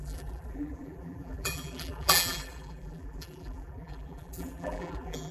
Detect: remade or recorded remade